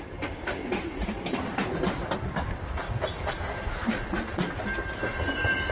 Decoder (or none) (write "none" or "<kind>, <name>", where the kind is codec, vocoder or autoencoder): none